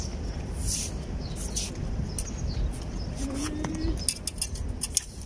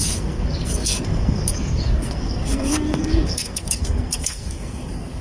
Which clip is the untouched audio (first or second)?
first